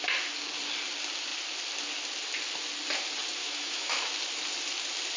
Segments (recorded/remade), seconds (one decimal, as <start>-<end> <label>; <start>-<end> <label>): 0.0-3.4 recorded; 3.4-4.1 remade; 4.1-5.2 recorded